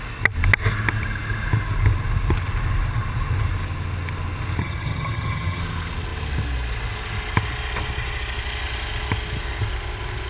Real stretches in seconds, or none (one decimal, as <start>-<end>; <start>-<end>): 0.0-4.6; 5.6-10.3